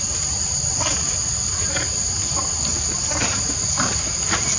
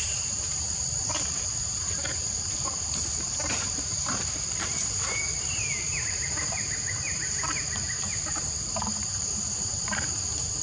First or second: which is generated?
second